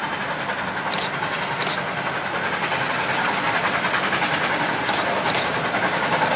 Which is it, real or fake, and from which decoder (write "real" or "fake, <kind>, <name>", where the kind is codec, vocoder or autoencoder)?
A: real